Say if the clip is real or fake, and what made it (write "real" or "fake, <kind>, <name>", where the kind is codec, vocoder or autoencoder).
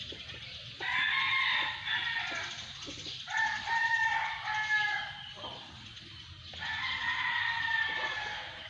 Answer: real